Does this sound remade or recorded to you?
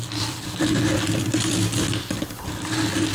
recorded